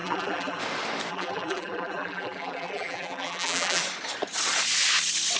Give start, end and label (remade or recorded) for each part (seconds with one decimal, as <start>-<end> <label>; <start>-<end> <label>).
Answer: 0.0-0.6 remade; 0.6-1.1 recorded; 1.1-3.8 remade; 3.8-5.4 recorded

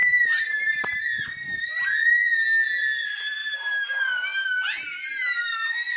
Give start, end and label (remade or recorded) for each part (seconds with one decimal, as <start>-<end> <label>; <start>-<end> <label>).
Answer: 0.0-0.9 remade; 0.9-3.4 recorded; 3.4-4.0 remade; 4.0-6.0 recorded

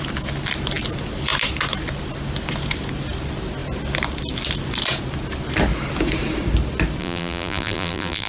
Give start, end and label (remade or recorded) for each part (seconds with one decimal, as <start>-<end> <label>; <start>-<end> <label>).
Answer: 0.0-7.0 recorded; 7.0-8.3 remade

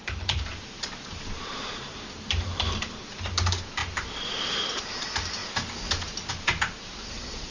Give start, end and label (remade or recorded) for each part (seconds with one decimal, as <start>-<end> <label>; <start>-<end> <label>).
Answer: 0.0-2.9 remade; 2.9-7.5 recorded

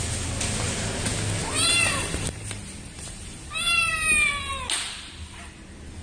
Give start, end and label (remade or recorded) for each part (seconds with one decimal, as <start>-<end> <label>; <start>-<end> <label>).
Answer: 0.0-1.4 recorded; 1.4-4.3 remade; 4.3-6.0 recorded

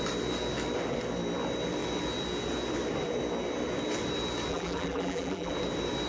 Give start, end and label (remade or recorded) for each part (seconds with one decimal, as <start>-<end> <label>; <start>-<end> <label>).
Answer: 0.0-4.5 recorded; 4.5-5.5 remade; 5.5-6.1 recorded